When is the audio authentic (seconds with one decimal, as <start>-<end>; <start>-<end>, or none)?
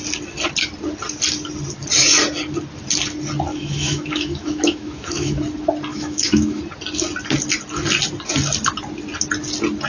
0.0-3.5; 5.4-5.9; 6.6-9.9